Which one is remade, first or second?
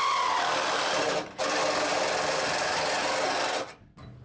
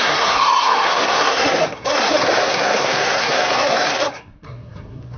second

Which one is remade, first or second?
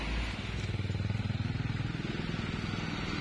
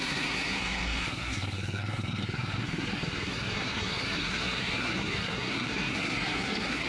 second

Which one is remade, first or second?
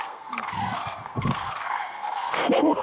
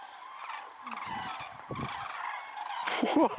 first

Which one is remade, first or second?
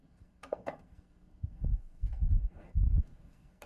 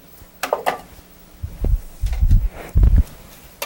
first